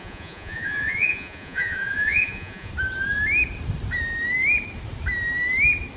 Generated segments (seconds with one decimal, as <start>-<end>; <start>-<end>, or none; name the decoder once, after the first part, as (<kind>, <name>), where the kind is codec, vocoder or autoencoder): 0.0-2.7 (vocoder, Vocos)